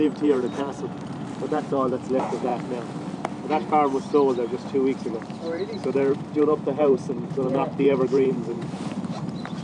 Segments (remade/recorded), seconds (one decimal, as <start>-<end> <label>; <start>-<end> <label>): 0.0-2.5 remade; 2.5-5.2 recorded; 5.2-9.6 remade